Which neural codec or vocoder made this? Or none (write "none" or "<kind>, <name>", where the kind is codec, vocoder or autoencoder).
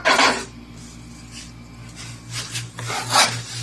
none